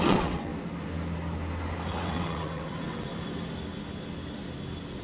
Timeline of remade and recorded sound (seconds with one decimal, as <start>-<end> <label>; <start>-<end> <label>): 0.0-0.5 remade; 0.5-1.9 recorded; 1.9-3.1 remade; 3.1-5.0 recorded